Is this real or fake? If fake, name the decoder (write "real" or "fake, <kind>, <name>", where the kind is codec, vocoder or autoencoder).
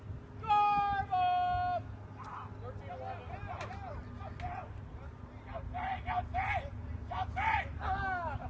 real